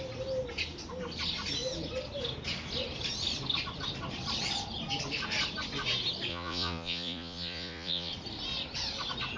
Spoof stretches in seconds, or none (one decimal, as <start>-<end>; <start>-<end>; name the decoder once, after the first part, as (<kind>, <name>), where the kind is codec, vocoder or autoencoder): 6.3-8.1 (vocoder, Vocos)

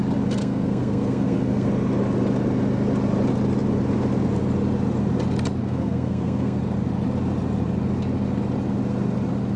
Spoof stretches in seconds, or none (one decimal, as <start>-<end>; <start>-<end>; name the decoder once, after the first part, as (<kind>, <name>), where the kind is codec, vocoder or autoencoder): 0.4-1.7 (codec, SNAC); 5.6-6.6